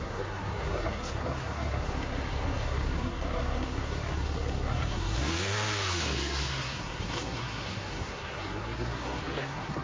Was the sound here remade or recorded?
remade